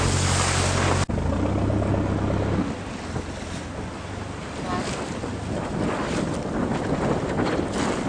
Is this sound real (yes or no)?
yes